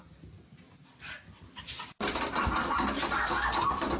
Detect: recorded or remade recorded